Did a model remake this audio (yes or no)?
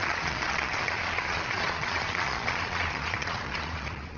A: yes